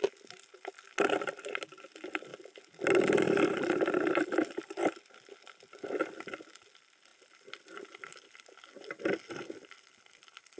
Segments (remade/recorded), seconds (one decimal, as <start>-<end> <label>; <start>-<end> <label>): 0.0-10.6 recorded